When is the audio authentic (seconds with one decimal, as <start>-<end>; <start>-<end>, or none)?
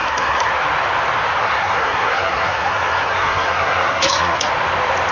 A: 0.5-1.4; 4.5-5.1